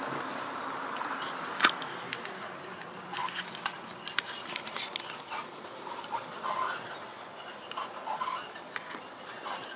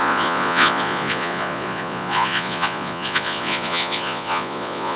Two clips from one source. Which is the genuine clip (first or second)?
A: first